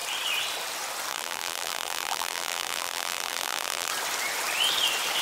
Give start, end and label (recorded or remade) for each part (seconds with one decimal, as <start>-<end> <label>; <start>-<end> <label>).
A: 0.0-1.1 recorded; 1.1-3.9 remade; 3.9-5.2 recorded